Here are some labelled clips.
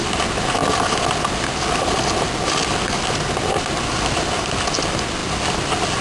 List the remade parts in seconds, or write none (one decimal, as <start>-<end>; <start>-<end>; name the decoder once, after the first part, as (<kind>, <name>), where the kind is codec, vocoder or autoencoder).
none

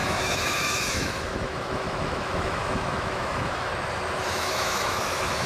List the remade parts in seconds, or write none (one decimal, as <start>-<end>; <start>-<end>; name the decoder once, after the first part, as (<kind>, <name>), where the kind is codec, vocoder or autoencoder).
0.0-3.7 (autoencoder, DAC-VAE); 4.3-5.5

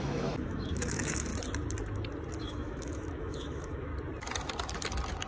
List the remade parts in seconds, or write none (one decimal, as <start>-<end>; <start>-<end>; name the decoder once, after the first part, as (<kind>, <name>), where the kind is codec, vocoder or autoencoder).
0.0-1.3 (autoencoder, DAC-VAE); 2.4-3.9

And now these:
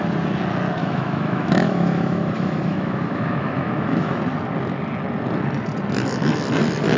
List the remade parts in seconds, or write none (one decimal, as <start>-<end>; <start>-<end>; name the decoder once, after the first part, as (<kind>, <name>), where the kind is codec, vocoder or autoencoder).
0.8-4.2 (autoencoder, DAC-VAE)

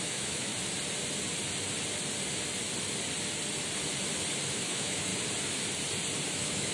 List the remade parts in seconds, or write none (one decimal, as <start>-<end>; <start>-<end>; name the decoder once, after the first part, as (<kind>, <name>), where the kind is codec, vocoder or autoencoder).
0.0-0.5 (autoencoder, DAC-VAE); 4.5-5.1; 6.3-6.7